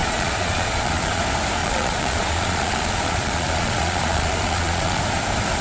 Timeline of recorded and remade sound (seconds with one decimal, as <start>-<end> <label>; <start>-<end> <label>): 0.0-1.2 remade; 1.2-1.6 recorded; 1.6-5.0 remade; 5.0-5.6 recorded